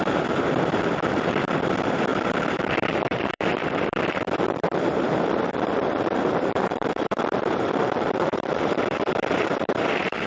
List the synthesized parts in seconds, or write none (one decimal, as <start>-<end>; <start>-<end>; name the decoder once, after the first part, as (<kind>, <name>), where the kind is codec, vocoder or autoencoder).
0.0-10.3 (vocoder, BigVGAN v2)